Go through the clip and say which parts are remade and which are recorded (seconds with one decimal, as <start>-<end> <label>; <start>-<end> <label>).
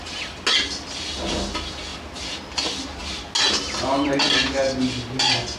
0.0-5.6 recorded